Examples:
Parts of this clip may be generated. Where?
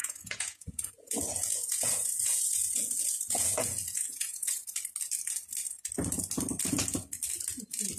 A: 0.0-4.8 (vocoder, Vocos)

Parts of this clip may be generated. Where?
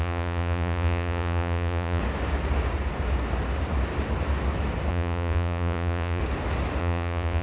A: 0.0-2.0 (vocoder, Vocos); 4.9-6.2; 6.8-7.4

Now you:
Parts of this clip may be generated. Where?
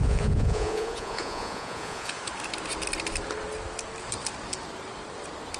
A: 0.0-2.2 (vocoder, Vocos)